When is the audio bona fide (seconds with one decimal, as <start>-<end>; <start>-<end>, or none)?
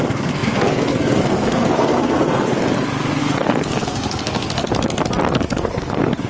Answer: 2.6-3.2; 4.6-5.3